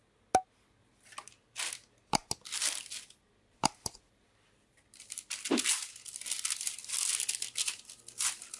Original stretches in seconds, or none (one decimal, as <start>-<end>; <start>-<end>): 0.0-8.6